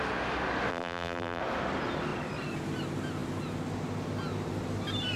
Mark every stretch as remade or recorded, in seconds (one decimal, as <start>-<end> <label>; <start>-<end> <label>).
0.0-0.7 recorded; 0.7-1.4 remade; 1.4-5.2 recorded